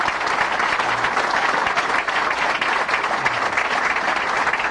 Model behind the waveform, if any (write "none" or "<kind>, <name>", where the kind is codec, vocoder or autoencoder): none